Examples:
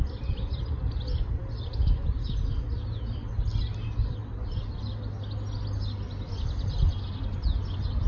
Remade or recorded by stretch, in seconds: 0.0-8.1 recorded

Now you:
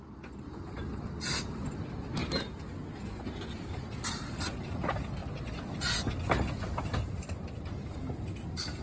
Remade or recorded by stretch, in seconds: 0.0-8.8 recorded